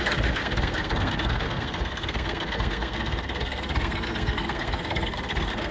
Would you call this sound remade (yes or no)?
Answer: yes